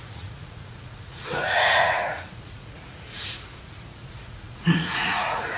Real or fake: fake